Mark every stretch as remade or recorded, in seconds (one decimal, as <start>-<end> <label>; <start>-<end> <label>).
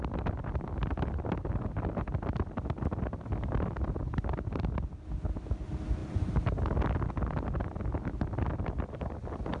0.0-9.6 recorded